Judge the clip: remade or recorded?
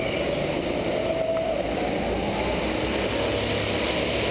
recorded